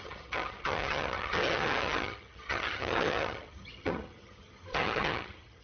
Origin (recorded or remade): remade